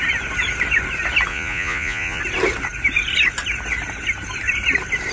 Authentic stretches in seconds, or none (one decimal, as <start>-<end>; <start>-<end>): 0.0-1.3; 2.2-5.1